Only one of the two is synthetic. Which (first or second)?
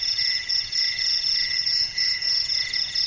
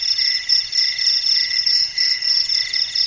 first